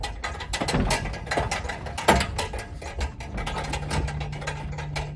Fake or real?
real